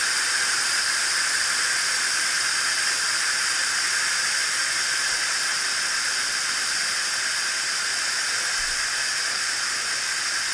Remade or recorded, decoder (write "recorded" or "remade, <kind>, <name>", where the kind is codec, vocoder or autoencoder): remade, vocoder, BigVGAN v2